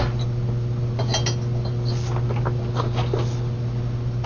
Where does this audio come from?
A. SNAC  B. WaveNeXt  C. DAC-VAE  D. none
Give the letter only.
D